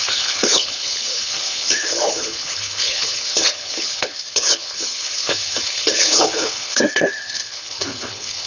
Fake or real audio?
fake